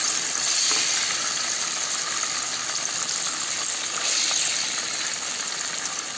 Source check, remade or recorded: recorded